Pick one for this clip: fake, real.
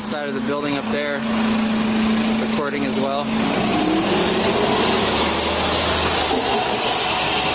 real